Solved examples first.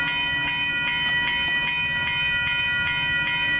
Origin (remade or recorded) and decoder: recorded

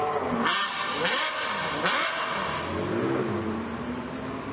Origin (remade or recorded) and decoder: recorded